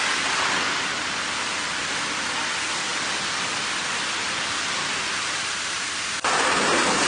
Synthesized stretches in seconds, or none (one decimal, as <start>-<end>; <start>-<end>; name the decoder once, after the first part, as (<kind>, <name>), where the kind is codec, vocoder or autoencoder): none